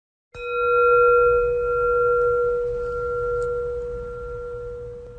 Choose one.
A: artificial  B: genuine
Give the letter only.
B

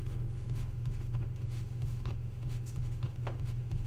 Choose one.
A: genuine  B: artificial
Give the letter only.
B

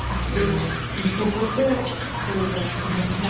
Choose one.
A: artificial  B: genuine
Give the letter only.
A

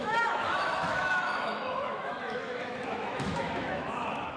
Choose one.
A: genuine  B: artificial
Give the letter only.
B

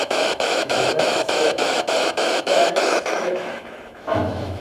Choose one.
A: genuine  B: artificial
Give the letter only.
B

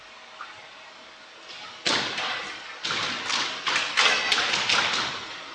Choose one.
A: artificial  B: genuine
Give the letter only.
B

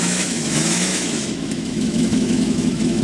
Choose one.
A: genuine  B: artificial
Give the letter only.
B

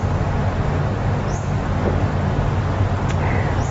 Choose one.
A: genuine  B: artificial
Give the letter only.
A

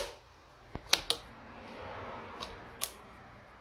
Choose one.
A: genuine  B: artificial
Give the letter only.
A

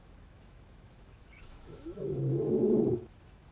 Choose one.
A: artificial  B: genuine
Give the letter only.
A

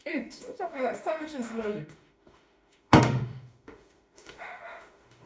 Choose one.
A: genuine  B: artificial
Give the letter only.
B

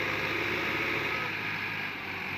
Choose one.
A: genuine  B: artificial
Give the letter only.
A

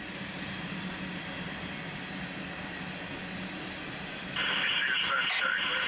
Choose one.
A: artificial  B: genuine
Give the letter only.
B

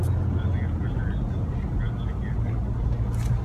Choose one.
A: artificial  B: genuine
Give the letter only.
B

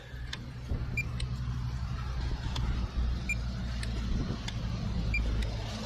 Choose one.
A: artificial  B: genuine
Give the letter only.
B